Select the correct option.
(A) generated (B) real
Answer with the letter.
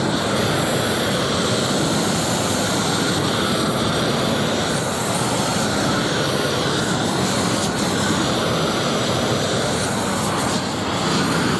B